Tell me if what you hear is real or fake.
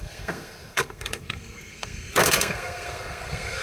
fake